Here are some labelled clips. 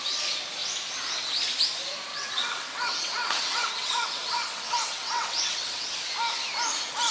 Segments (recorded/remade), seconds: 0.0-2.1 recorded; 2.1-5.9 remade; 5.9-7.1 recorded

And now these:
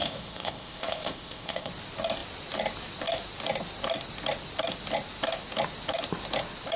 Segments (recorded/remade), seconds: 0.0-1.7 remade; 1.7-6.8 recorded